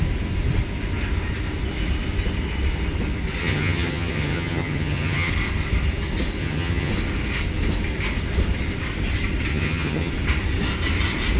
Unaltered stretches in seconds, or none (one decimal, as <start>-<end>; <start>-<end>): 0.0-3.4; 5.3-6.4; 6.9-9.5; 10.1-11.4